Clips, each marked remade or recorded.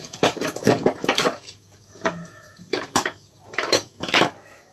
remade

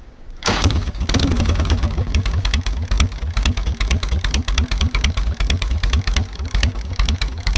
remade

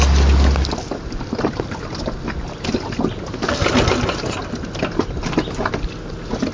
recorded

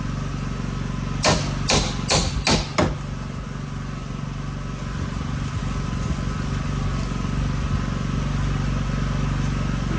recorded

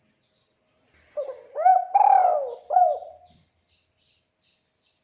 recorded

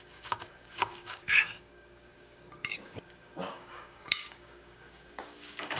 remade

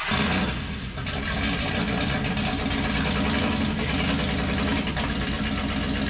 recorded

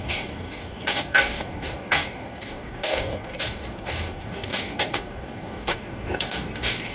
remade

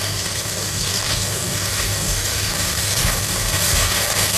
remade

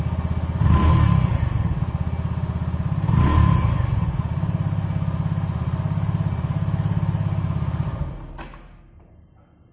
recorded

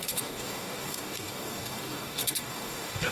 remade